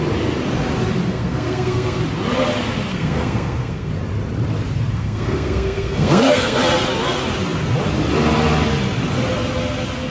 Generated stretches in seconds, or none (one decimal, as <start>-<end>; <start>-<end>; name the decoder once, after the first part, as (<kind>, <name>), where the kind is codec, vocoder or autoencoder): 1.1-2.0 (codec, SNAC); 2.9-3.9; 4.9-6.6